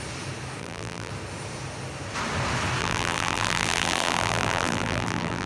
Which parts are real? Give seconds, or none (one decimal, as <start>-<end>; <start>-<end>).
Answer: 0.0-0.6; 1.1-2.8